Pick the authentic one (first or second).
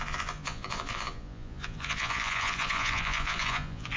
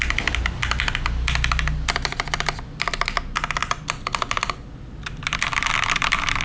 second